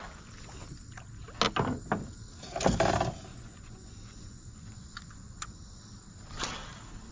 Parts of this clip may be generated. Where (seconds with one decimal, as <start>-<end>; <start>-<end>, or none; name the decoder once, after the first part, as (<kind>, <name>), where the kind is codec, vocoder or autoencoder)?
3.3-5.8 (vocoder, Vocos)